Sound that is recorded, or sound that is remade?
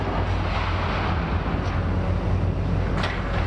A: recorded